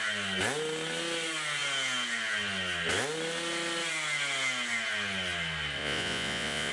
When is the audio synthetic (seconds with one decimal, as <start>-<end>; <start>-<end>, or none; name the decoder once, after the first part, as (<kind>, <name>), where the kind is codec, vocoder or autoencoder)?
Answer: 5.8-6.7 (vocoder, Vocos)